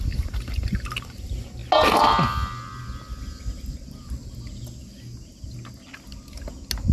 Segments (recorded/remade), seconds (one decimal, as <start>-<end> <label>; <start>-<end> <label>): 0.0-6.9 recorded